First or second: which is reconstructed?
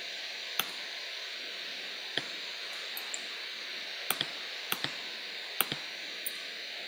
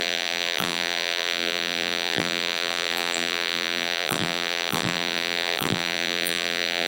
second